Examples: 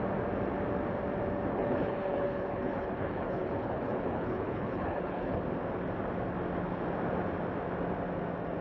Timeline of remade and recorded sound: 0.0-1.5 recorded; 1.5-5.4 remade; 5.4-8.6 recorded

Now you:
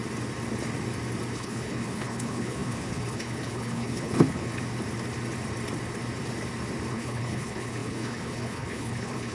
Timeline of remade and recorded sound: 0.0-1.3 recorded; 1.3-4.5 remade; 4.5-6.9 recorded; 6.9-9.3 remade

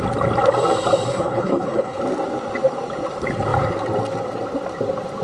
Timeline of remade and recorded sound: 0.0-1.1 recorded; 1.1-2.0 remade; 2.0-5.2 recorded

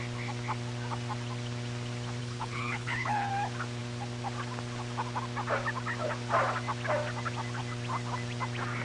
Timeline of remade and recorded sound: 0.0-2.2 recorded; 2.2-3.3 remade; 3.3-8.8 recorded

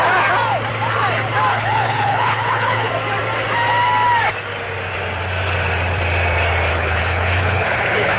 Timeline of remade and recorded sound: 0.0-1.5 recorded; 1.5-2.9 remade; 2.9-6.7 recorded; 6.7-8.2 remade

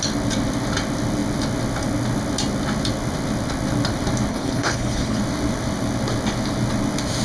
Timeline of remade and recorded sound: 0.0-4.3 recorded; 4.3-5.2 remade; 5.2-7.2 recorded

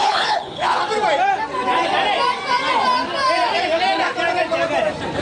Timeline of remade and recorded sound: 0.0-0.8 remade; 0.8-5.2 recorded

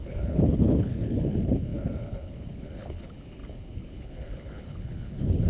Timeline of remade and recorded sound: 0.0-5.5 remade